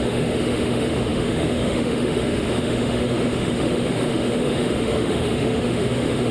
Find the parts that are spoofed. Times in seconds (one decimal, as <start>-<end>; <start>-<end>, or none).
0.0-6.3